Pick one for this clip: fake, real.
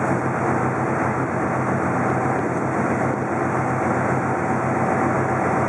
real